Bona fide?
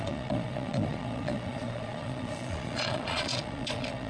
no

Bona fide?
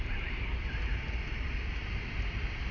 yes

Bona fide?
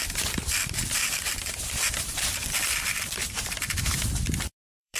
no